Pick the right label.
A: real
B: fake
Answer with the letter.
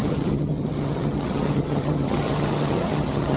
B